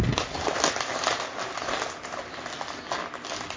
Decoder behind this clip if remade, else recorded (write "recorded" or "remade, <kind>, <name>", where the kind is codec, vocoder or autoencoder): recorded